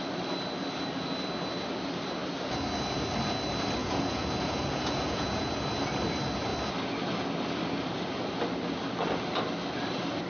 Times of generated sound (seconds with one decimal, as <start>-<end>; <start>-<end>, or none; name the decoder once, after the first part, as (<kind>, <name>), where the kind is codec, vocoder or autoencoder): 3.8-5.6 (vocoder, Vocos)